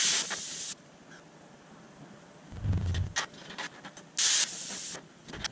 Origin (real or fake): real